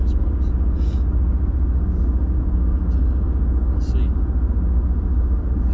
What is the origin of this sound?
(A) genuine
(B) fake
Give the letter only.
A